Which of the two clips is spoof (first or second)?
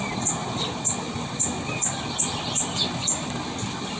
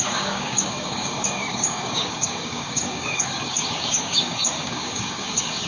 second